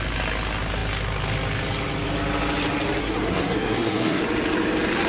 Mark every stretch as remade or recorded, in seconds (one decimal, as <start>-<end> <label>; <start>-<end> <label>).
0.0-3.0 recorded; 3.0-4.2 remade; 4.2-5.1 recorded